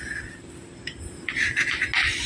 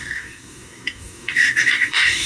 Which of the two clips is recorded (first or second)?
first